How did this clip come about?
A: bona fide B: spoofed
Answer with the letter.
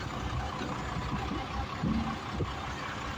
A